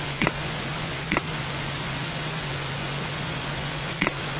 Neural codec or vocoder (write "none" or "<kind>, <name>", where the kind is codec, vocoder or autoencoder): vocoder, Vocos